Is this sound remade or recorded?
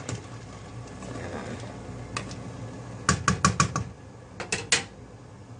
recorded